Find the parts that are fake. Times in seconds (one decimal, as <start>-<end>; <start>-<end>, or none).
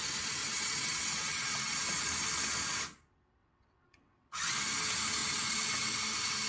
0.4-1.8; 3.4-4.5; 5.2-6.0